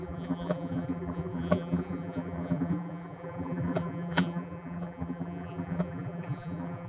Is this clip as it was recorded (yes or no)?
no